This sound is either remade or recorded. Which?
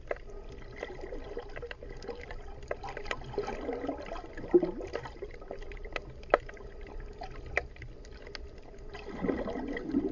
recorded